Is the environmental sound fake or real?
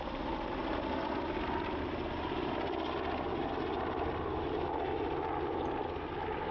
real